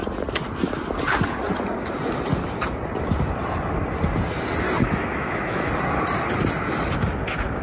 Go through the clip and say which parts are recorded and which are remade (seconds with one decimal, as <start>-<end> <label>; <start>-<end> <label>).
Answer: 0.0-4.8 recorded; 4.8-5.7 remade; 5.7-7.6 recorded